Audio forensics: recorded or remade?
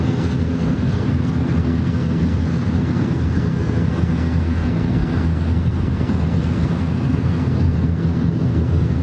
remade